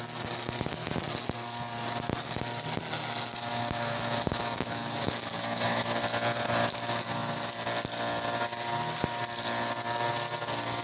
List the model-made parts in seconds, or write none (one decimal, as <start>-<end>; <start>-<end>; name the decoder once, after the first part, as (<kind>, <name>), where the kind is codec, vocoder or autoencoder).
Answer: 3.5-6.0 (codec, DAC)